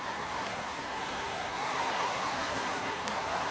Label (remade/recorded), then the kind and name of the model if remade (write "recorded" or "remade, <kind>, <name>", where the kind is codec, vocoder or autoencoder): remade, codec, SNAC